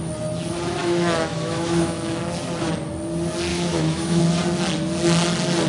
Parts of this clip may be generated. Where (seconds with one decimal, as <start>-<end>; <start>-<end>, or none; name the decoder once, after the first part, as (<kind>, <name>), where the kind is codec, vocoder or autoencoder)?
0.8-2.2 (autoencoder, DAC-VAE); 3.5-4.2